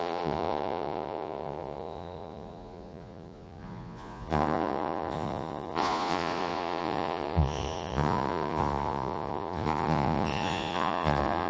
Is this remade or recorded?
remade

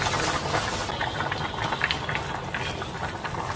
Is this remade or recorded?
recorded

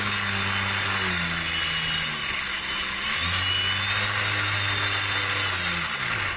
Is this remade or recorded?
recorded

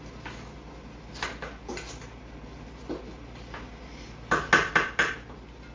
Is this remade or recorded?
recorded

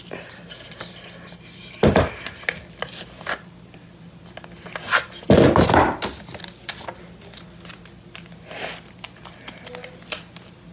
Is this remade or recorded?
recorded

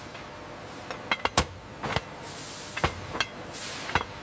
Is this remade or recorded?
recorded